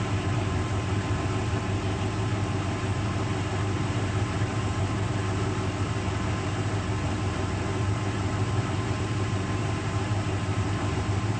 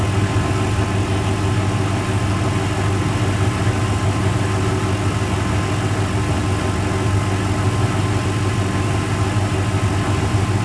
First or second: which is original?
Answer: second